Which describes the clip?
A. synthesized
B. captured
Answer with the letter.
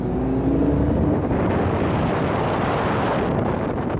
B